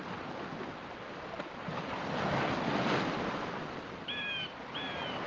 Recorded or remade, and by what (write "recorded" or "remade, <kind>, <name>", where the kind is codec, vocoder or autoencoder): recorded